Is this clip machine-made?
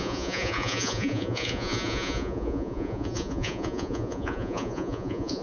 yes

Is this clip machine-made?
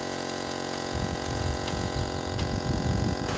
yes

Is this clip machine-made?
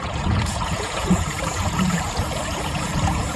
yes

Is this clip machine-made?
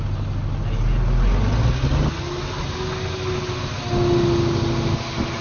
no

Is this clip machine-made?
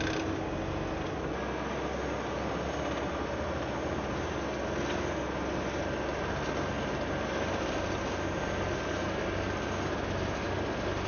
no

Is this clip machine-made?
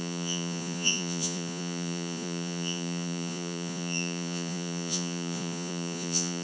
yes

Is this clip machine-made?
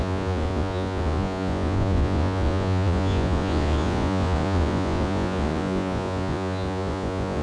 yes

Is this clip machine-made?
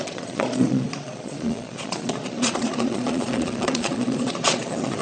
yes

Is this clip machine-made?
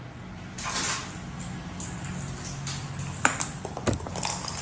no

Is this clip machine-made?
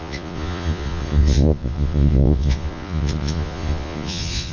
yes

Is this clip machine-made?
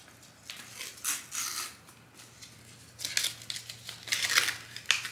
no